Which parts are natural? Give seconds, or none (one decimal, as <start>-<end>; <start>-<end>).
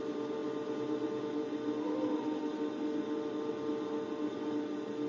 0.0-5.1